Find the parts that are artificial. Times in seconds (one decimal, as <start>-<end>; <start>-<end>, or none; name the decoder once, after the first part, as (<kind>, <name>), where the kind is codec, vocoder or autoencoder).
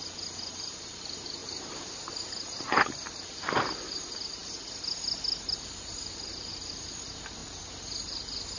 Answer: none